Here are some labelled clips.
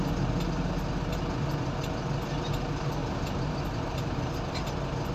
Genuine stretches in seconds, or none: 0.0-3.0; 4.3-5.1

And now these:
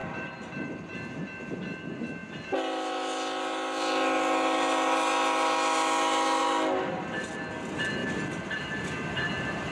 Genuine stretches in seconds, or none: 0.7-9.7

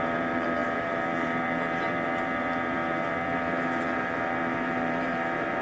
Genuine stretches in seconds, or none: none

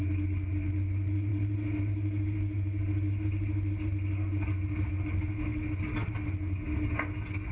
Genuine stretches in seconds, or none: 0.0-7.5

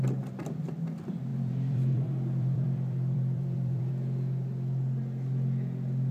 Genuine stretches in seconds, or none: 0.0-1.3; 3.9-6.1

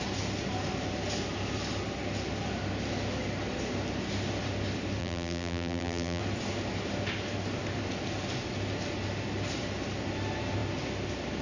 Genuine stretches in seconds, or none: 0.0-5.0; 6.2-11.4

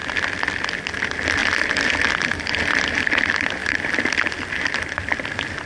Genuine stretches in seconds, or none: 0.0-1.0; 3.6-4.7